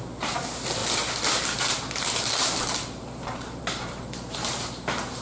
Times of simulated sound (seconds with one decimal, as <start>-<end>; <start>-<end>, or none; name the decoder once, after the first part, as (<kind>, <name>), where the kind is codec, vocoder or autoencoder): none